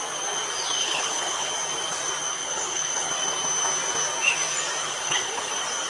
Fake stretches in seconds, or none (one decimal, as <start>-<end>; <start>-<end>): 0.8-1.5; 2.3-3.1; 4.8-5.5